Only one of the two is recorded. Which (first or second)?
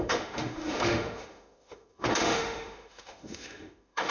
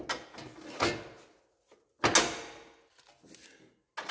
second